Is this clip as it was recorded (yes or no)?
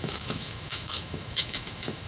no